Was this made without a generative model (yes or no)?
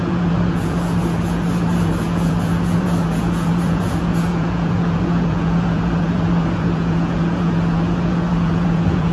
no